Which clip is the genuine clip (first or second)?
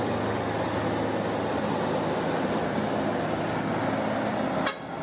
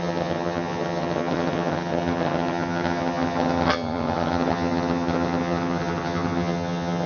first